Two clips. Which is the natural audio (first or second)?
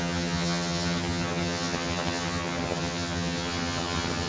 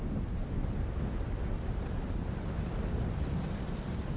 second